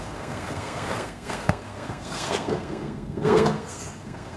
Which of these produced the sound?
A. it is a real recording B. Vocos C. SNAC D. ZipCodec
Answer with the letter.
C